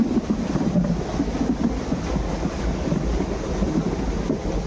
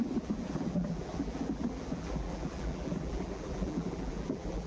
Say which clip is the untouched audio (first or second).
first